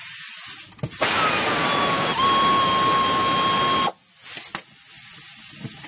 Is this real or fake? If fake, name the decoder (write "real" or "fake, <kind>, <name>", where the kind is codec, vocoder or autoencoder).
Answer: real